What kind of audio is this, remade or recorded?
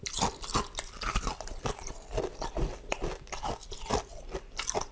recorded